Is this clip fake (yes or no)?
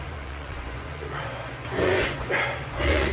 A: yes